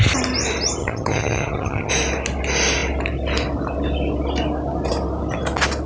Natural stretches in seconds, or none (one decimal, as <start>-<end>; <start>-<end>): 0.0-0.8; 1.9-5.9